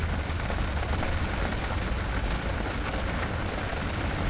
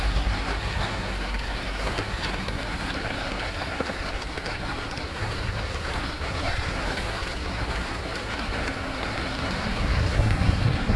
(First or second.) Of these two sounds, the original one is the first